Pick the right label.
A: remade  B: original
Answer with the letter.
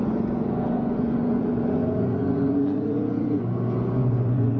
A